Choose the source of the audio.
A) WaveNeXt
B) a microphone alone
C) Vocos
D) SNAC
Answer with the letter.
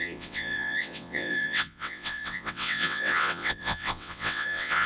A